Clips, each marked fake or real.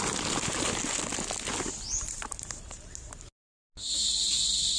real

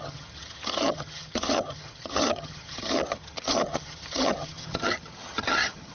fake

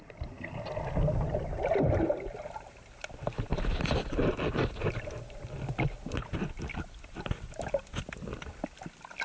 real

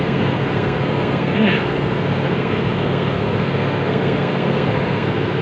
fake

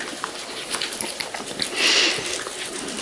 real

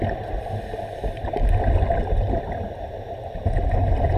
real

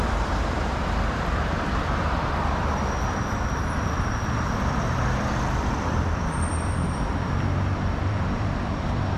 fake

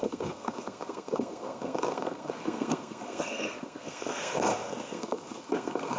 fake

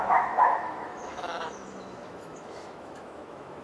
fake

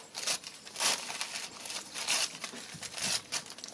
real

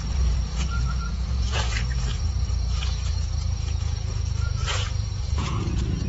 fake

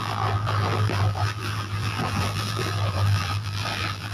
fake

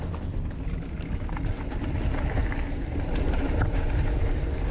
fake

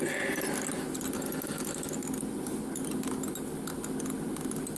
real